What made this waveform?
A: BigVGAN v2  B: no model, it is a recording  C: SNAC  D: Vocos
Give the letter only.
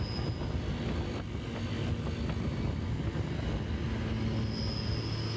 B